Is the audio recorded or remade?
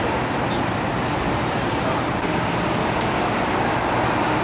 recorded